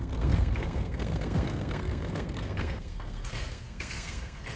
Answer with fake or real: fake